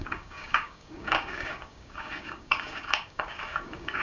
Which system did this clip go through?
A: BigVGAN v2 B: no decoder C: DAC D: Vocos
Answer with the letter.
C